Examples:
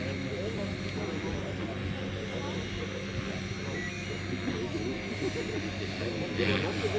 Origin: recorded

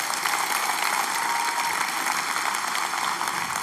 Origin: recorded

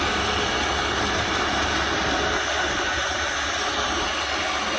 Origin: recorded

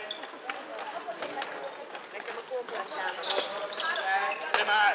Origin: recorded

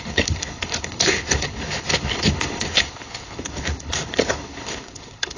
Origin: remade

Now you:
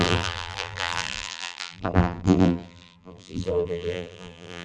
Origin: remade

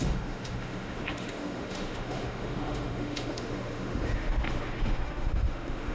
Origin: remade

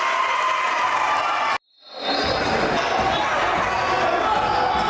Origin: recorded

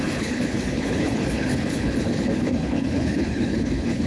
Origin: remade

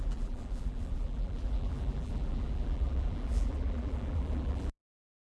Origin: remade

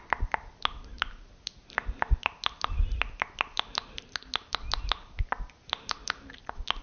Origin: recorded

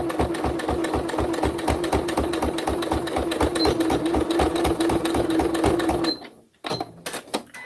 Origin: recorded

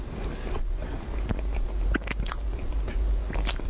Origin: recorded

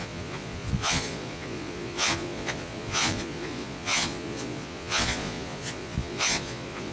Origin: remade